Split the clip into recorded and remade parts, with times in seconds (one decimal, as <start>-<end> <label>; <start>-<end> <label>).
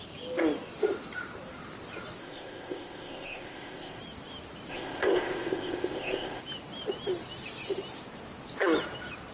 0.0-2.2 recorded; 2.2-4.0 remade; 4.0-4.7 recorded; 4.7-6.4 remade; 6.4-9.3 recorded